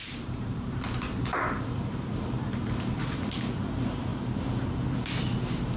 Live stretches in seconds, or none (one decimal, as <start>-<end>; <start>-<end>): 3.0-5.8